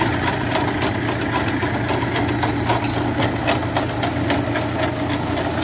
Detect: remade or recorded recorded